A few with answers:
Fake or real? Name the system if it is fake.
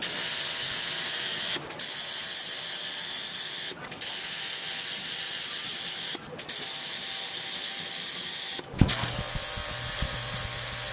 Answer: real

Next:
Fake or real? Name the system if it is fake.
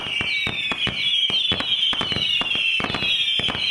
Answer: real